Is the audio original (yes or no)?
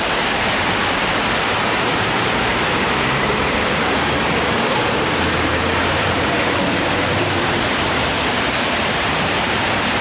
no